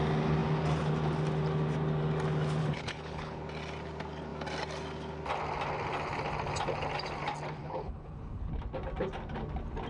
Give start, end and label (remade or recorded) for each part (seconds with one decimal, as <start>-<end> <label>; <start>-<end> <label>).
0.0-2.6 recorded; 2.6-3.4 remade; 3.4-7.6 recorded; 7.6-8.5 remade; 8.5-9.9 recorded